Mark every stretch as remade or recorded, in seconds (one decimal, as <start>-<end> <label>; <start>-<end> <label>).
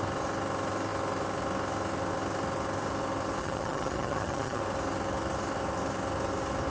0.0-3.4 recorded; 3.4-4.6 remade; 4.6-6.7 recorded